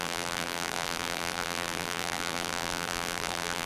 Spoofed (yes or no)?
yes